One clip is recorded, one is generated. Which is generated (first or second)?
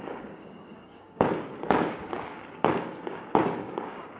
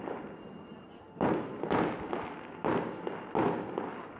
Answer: first